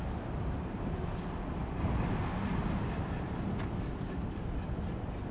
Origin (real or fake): real